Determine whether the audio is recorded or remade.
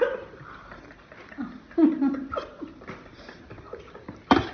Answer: recorded